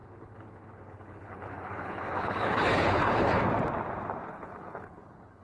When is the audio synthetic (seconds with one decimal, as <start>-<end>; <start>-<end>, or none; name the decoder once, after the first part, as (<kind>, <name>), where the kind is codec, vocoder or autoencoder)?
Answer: 0.0-3.4 (codec, HILCodec); 4.3-5.4